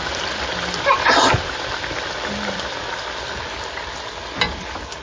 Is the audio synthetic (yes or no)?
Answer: no